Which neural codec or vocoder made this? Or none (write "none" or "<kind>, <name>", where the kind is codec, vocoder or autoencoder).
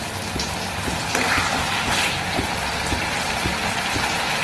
vocoder, BigVGAN v2